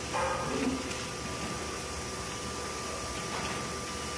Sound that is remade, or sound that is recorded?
recorded